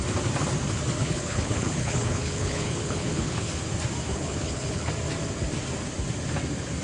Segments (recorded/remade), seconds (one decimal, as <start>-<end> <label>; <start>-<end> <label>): 0.0-1.0 recorded; 1.0-3.5 remade; 3.5-4.1 recorded; 4.1-4.9 remade; 4.9-6.8 recorded